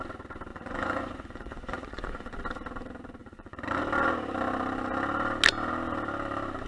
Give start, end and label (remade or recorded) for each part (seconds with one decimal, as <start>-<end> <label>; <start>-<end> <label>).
0.0-0.5 recorded; 0.5-2.3 remade; 2.3-3.2 recorded; 3.2-3.8 remade; 3.8-6.7 recorded